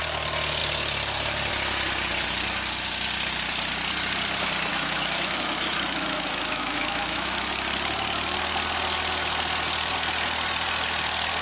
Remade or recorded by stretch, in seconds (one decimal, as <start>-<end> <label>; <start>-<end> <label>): 0.0-4.7 recorded; 4.7-7.5 remade; 7.5-11.4 recorded